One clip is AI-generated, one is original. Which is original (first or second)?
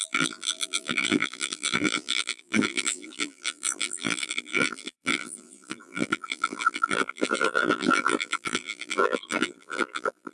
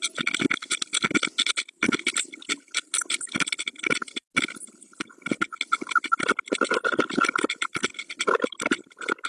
second